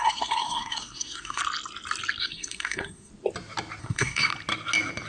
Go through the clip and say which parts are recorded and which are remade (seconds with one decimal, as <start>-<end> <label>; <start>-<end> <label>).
0.0-1.4 remade; 1.4-2.2 recorded; 2.2-3.1 remade; 3.1-3.8 recorded; 3.8-4.3 remade; 4.3-5.1 recorded